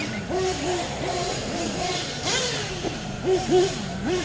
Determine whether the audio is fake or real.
fake